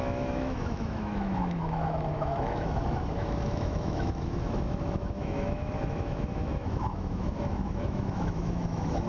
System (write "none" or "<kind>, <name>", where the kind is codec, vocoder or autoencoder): autoencoder, DAC-VAE